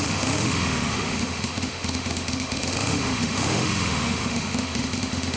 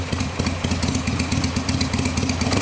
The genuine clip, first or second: second